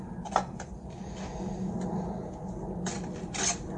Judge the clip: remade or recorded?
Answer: recorded